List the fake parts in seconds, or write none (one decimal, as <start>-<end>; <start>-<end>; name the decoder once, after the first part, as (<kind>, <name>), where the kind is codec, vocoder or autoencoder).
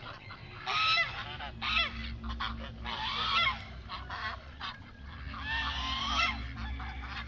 0.0-0.4 (vocoder, Vocos); 4.4-5.1